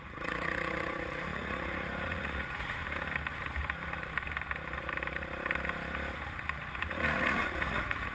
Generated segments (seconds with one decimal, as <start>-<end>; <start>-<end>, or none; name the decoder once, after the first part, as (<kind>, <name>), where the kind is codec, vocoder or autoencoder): 0.0-2.8 (vocoder, Vocos); 6.8-8.1